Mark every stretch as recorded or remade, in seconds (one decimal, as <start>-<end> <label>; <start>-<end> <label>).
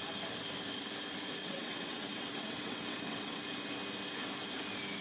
0.0-1.4 recorded; 1.4-3.4 remade; 3.4-5.0 recorded